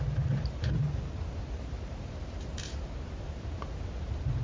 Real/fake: fake